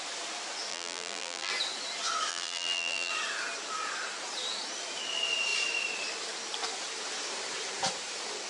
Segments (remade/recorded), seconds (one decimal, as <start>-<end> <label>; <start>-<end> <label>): 0.0-0.7 recorded; 0.7-1.5 remade; 1.5-2.3 recorded; 2.3-3.1 remade; 3.1-8.5 recorded